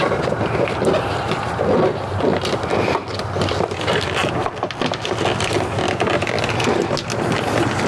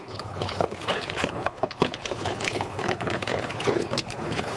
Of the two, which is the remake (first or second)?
second